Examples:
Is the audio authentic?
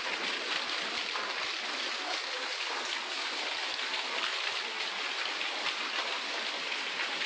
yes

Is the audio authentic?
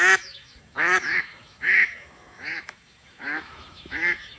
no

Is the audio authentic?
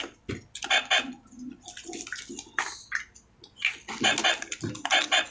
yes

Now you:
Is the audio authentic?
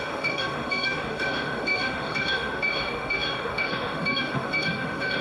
no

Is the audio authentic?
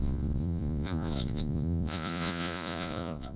no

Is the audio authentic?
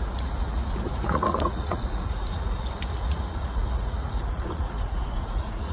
no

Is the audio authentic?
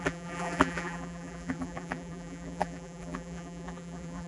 no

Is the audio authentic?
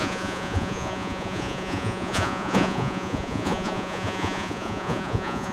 no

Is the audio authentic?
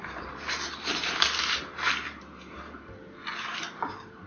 no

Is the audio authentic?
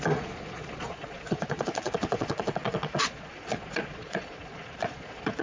no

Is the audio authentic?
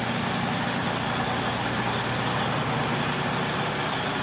yes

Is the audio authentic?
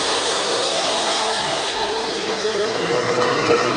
no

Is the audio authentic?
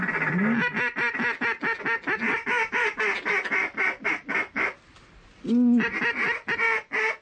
yes